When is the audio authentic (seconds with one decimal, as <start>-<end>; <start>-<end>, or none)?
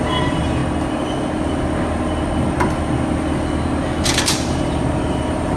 0.6-4.0